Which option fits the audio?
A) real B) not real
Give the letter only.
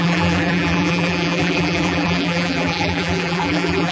B